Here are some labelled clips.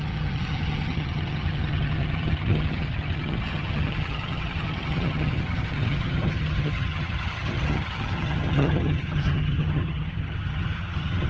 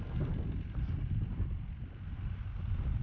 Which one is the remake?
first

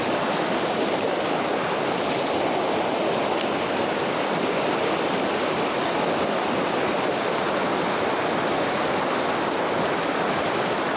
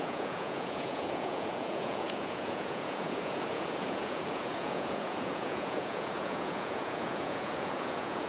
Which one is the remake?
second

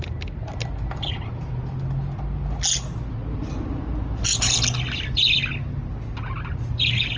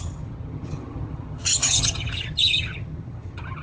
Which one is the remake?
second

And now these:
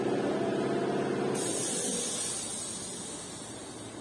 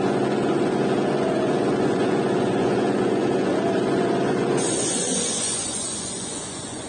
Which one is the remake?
second